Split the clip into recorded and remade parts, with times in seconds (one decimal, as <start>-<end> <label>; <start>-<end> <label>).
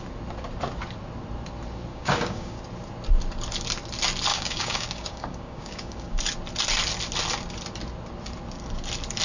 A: 0.0-1.9 recorded; 1.9-2.6 remade; 2.6-4.3 recorded; 4.3-6.2 remade; 6.2-9.2 recorded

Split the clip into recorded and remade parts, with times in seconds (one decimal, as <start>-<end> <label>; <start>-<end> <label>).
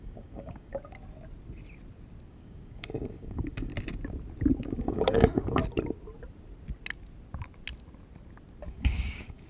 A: 0.0-0.7 remade; 0.7-2.3 recorded; 2.3-3.7 remade; 3.7-4.6 recorded; 4.6-5.6 remade; 5.6-8.7 recorded; 8.7-9.5 remade